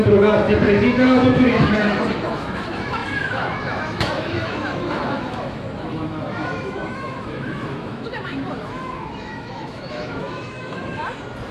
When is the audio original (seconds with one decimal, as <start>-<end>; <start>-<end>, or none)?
11.0-11.5